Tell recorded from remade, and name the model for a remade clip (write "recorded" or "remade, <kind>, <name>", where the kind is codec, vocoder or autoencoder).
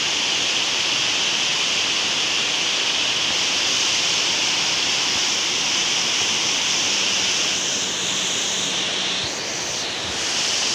recorded